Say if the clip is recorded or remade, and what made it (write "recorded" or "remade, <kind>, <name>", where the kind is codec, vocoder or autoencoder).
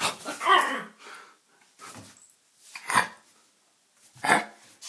recorded